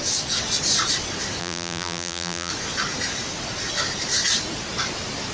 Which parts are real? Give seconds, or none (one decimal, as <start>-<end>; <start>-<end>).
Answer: 0.0-1.4; 2.5-5.3

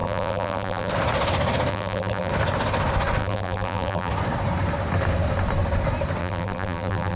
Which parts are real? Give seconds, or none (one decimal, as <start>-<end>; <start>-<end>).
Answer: 0.9-1.7; 2.3-3.2; 4.1-6.2